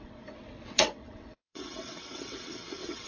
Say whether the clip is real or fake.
fake